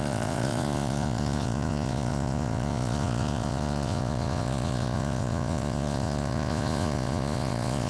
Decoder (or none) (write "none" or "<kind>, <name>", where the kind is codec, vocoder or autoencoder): vocoder, Vocos